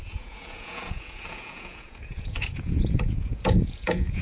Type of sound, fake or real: fake